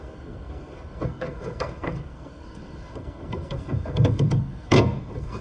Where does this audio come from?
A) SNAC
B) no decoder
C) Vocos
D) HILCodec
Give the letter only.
A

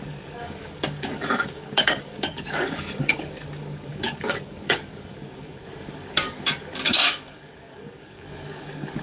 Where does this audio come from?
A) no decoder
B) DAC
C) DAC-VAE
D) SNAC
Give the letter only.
B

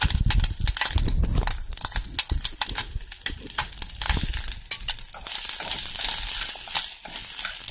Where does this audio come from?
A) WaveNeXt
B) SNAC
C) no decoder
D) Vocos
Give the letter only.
C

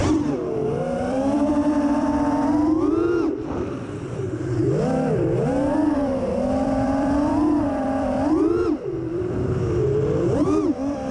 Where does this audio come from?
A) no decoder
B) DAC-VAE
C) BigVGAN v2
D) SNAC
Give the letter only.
C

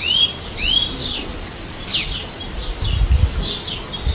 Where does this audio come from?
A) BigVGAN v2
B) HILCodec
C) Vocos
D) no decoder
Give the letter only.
D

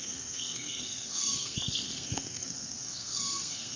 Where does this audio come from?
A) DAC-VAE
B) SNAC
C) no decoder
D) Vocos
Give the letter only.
B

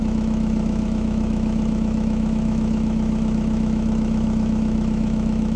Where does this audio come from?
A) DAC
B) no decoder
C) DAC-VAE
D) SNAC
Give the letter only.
C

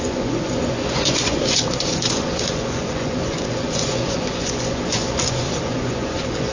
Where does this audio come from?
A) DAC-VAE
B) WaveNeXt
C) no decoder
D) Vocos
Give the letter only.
D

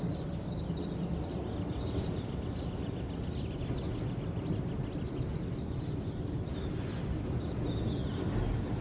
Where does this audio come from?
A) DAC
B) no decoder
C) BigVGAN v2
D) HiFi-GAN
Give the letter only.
B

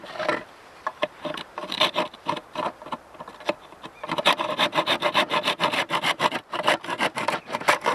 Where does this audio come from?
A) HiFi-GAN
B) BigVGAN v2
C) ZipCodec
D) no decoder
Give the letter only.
B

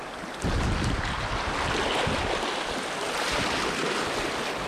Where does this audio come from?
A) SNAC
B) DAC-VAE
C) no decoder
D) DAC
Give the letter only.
C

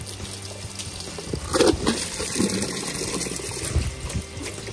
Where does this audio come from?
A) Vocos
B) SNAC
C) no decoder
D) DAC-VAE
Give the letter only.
C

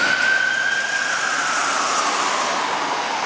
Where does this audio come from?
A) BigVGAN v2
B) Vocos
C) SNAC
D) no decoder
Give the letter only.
D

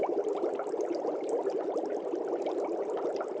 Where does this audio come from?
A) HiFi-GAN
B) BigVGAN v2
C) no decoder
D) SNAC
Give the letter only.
C